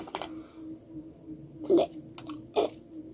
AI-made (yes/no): no